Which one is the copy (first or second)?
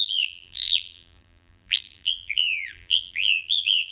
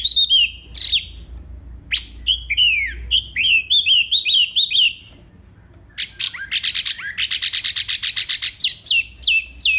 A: first